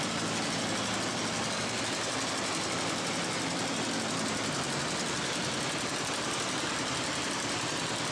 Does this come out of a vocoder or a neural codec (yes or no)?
no